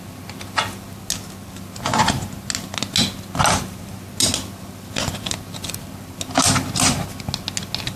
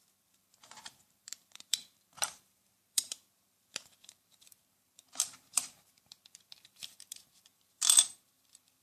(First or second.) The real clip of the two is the first